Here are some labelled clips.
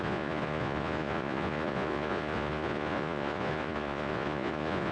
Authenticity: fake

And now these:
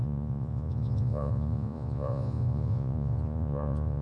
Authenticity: fake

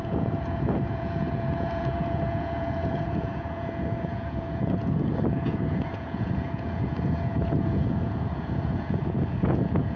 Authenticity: fake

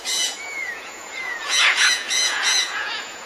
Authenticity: fake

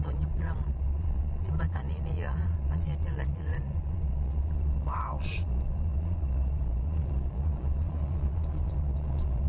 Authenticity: fake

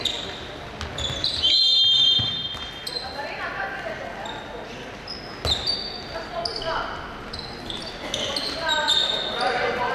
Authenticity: real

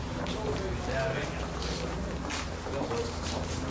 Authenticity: real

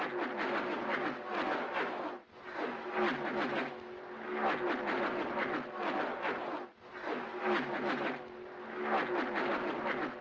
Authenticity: real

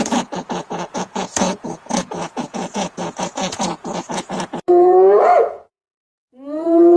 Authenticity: fake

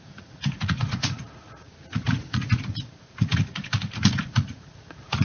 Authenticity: fake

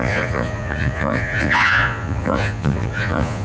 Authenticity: fake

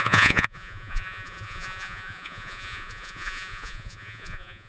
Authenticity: fake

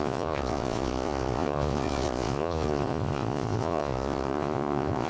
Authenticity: fake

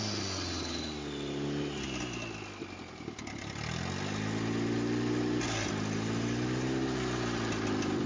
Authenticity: real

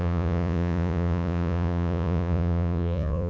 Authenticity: fake